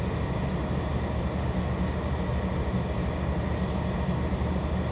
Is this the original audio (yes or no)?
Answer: yes